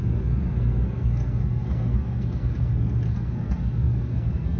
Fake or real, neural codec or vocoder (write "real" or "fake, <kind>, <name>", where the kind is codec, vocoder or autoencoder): fake, codec, SNAC